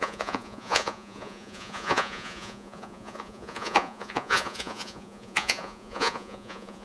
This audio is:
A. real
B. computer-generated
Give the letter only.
B